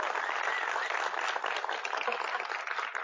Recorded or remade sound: recorded